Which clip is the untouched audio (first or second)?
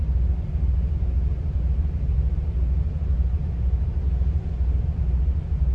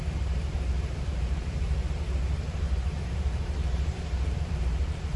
first